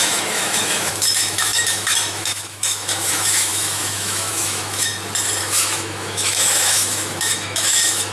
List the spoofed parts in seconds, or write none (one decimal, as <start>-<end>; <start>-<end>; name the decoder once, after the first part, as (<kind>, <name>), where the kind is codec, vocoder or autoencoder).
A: 0.0-4.9 (autoencoder, DAC-VAE); 5.4-8.1